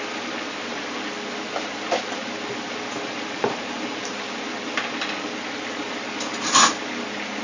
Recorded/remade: recorded